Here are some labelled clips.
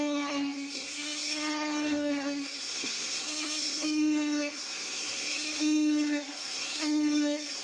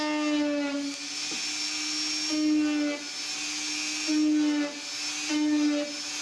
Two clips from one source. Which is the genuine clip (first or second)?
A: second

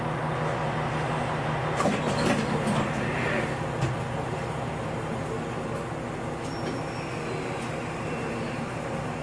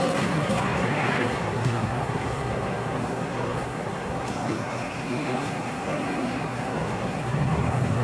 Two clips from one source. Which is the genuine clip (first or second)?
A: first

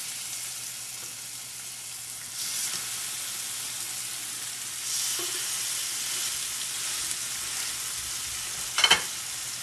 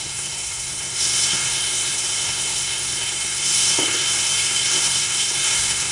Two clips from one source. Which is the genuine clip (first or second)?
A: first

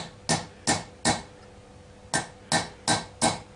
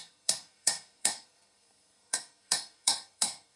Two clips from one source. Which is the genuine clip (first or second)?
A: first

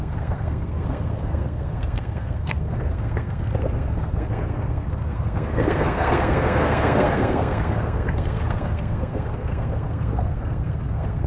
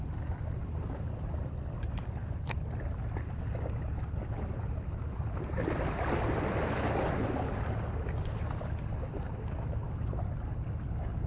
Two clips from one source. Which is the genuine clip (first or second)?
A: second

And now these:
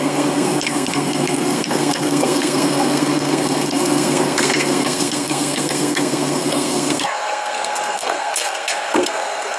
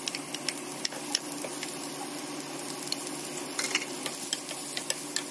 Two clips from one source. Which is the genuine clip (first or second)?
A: second